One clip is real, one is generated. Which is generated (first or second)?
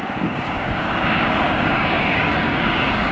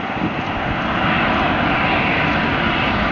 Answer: first